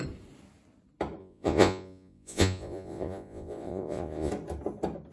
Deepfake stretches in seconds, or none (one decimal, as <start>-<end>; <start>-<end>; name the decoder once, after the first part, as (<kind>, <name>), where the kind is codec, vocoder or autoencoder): 1.2-4.3 (vocoder, Vocos)